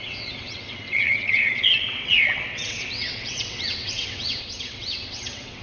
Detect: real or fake fake